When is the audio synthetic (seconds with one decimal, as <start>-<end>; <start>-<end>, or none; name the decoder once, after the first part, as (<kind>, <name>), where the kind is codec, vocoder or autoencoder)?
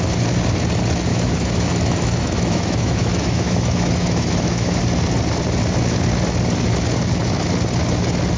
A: 1.1-4.8 (autoencoder, DAC-VAE)